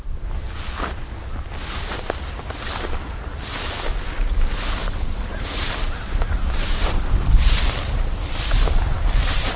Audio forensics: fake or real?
real